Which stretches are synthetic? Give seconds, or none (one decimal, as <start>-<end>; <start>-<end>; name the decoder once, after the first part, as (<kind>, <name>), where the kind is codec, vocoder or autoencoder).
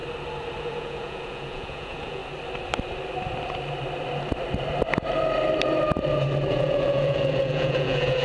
0.6-2.2 (vocoder, Vocos); 6.5-8.2